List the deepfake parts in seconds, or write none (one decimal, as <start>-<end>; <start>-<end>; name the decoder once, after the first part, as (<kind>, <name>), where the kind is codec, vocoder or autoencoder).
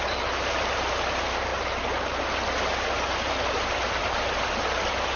none